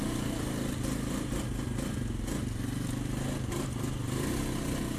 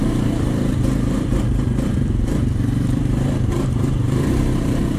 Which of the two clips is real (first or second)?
first